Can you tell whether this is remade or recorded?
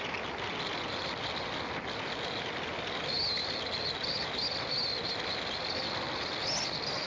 recorded